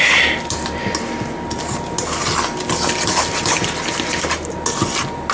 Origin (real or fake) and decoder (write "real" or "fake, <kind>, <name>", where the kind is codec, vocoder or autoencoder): real